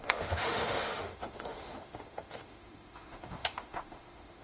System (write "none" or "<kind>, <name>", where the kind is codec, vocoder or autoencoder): autoencoder, DAC-VAE